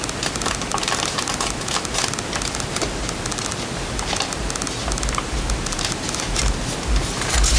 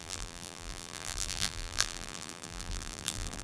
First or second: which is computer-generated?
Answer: second